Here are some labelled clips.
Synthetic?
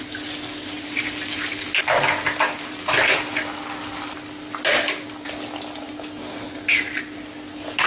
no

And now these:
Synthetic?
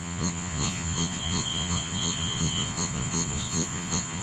yes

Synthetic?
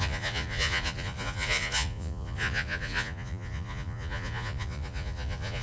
yes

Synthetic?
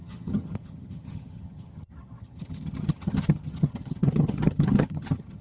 yes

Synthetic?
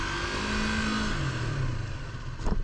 no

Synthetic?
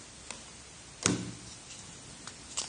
no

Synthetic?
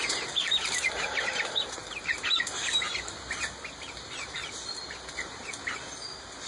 yes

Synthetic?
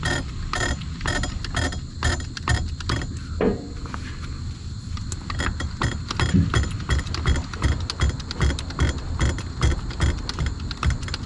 no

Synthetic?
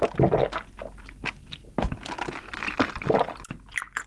no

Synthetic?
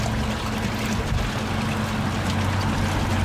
no